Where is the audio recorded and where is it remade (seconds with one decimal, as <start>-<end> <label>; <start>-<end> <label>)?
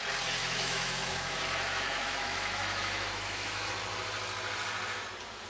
0.0-0.4 recorded; 0.4-3.7 remade; 3.7-5.5 recorded